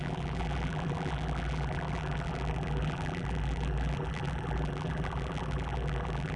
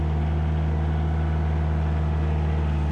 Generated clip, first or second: first